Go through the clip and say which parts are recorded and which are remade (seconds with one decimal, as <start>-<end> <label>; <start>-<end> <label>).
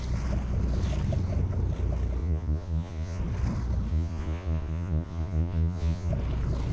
0.0-2.2 recorded; 2.2-3.2 remade; 3.2-3.9 recorded; 3.9-6.1 remade; 6.1-6.7 recorded